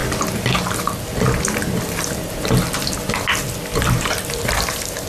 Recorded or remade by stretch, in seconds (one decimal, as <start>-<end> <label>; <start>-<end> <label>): 0.0-3.7 recorded; 3.7-5.1 remade